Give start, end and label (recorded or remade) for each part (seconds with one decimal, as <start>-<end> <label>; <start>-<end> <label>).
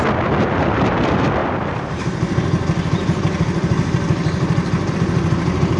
0.0-5.8 recorded